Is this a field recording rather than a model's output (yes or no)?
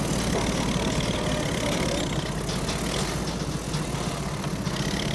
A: yes